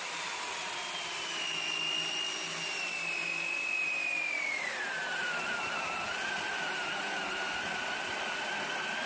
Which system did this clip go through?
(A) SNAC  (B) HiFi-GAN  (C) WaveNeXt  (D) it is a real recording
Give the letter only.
D